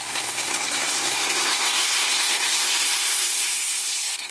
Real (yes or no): no